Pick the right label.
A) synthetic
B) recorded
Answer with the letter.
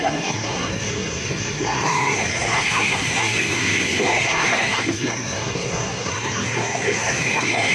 A